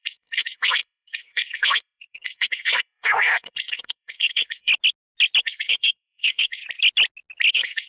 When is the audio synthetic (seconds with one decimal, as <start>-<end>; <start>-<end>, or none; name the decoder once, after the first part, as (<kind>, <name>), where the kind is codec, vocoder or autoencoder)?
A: 0.0-4.7 (codec, SNAC); 5.4-6.6; 7.5-7.9